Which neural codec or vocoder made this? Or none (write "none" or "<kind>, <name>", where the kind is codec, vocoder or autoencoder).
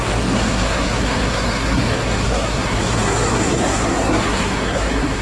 codec, SNAC